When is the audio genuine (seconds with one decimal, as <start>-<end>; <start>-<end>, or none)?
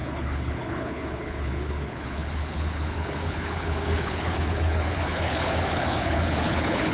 none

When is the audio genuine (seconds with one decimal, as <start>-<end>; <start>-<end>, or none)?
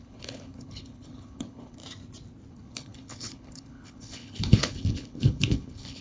1.8-2.5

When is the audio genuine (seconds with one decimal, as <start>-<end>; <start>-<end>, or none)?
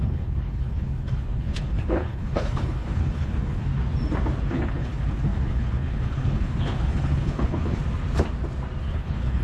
3.7-4.5; 7.8-8.8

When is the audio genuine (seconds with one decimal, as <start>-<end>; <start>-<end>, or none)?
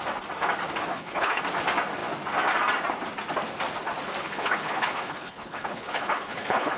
0.0-0.9; 1.4-4.2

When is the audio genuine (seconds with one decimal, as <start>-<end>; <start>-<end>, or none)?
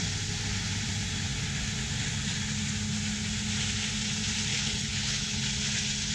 0.0-4.5; 5.4-6.1